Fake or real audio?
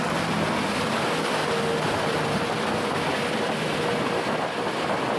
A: real